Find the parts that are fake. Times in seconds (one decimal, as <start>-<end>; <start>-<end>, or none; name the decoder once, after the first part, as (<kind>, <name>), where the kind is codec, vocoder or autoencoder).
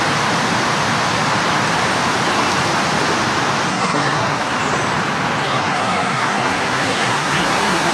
3.7-4.5 (codec, SNAC); 5.4-7.9